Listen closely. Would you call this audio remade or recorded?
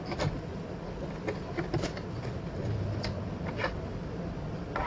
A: recorded